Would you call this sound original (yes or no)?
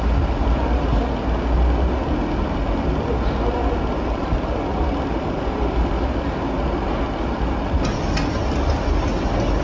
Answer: yes